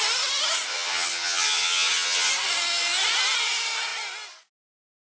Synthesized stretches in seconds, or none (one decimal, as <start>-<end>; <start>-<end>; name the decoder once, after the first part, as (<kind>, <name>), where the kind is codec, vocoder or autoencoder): 0.7-2.3 (vocoder, HiFi-GAN)